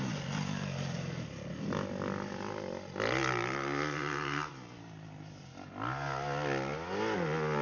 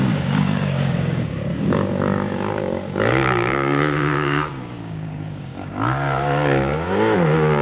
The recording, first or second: first